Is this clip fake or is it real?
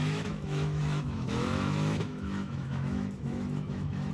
fake